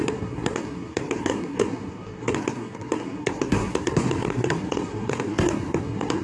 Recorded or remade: remade